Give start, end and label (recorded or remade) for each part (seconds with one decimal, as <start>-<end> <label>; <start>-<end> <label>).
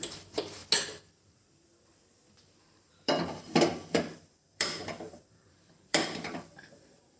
0.0-0.6 remade; 0.6-2.6 recorded; 2.6-7.2 remade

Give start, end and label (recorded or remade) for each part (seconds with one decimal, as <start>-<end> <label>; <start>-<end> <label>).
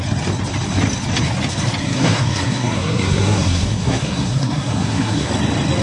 0.0-1.8 recorded; 1.8-5.3 remade; 5.3-5.8 recorded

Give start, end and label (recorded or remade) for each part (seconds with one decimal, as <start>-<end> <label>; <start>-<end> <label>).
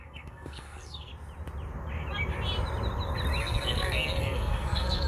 0.0-1.1 remade; 1.1-3.4 recorded; 3.4-5.1 remade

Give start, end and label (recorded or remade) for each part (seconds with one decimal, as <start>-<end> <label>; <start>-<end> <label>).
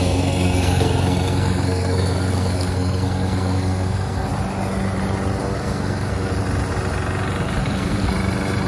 0.0-4.3 remade; 4.3-5.4 recorded; 5.4-6.3 remade; 6.3-7.6 recorded; 7.6-8.1 remade; 8.1-8.7 recorded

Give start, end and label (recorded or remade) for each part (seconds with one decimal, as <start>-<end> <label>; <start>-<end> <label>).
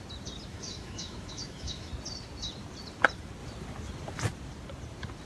0.0-0.5 recorded; 0.5-1.9 remade; 1.9-5.3 recorded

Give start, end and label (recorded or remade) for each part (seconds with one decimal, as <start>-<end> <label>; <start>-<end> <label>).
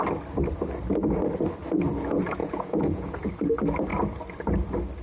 0.0-2.4 recorded; 2.4-3.3 remade; 3.3-5.0 recorded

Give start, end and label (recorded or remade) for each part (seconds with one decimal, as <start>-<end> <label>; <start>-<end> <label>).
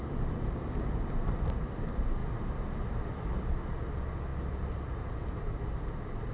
0.0-2.2 remade; 2.2-3.5 recorded; 3.5-4.3 remade; 4.3-5.1 recorded; 5.1-6.3 remade